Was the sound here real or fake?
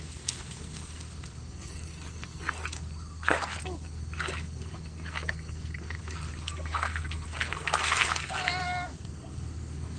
fake